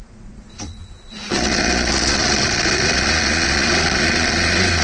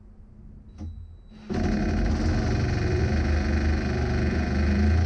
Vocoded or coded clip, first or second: first